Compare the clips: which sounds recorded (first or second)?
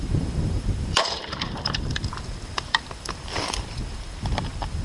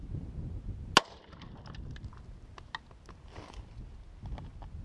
second